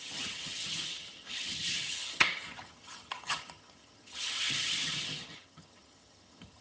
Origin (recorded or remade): remade